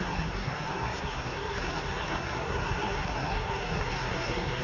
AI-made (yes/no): yes